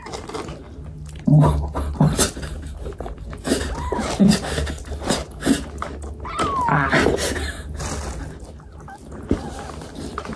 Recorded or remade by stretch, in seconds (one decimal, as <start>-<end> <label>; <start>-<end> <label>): 0.0-10.4 recorded